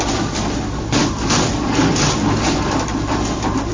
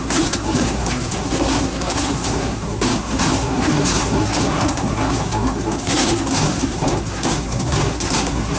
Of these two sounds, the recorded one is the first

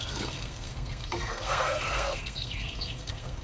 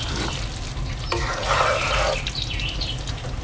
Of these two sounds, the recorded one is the second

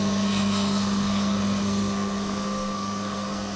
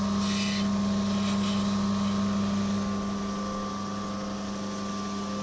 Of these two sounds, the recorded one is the second